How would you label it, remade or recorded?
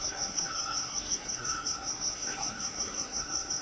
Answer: remade